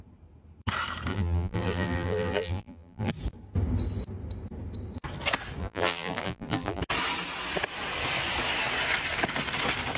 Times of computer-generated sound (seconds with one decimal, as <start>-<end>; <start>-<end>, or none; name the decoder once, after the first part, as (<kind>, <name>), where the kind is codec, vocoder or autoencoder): 1.1-3.1 (vocoder, BigVGAN v2); 5.6-6.8